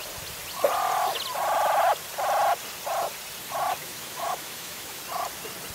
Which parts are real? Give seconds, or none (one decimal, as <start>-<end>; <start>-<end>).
0.0-3.8; 5.0-5.7